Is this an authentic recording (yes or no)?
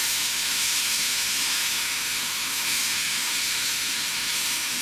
no